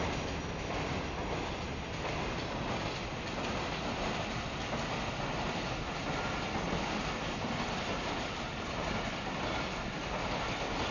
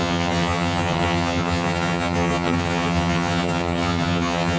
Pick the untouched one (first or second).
first